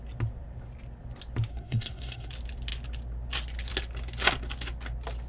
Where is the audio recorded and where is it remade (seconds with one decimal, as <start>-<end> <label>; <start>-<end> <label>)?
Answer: 0.0-1.5 recorded; 1.5-2.3 remade; 2.3-5.3 recorded